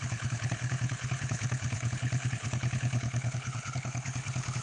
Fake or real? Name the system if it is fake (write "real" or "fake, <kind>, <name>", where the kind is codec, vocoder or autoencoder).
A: fake, codec, HILCodec